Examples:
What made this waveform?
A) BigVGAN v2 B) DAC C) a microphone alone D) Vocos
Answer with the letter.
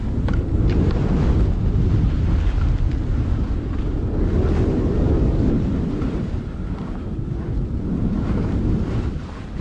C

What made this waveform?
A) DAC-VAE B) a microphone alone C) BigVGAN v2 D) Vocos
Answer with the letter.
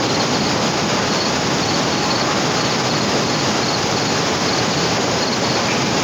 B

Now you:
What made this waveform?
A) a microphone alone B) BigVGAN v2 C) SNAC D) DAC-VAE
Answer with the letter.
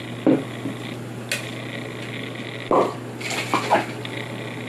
A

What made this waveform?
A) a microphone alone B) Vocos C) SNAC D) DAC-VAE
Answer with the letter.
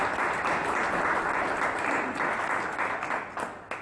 A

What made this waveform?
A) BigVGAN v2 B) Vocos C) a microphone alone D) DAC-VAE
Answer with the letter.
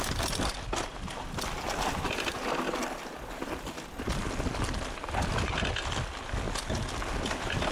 C